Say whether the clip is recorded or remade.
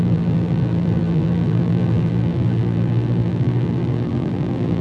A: remade